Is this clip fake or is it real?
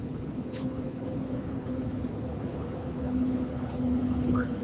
fake